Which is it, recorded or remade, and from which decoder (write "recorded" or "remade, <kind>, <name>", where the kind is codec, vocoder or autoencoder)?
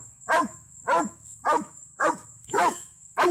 remade, autoencoder, DAC-VAE